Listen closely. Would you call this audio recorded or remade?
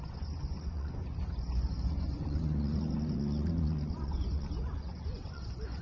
remade